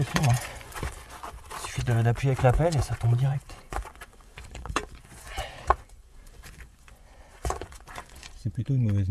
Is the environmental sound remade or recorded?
remade